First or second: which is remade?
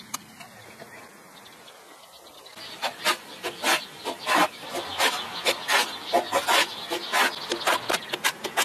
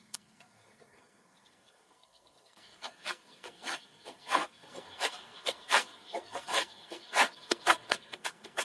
second